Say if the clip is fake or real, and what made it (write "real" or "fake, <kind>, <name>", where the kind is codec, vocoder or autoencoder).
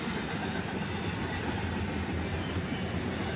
real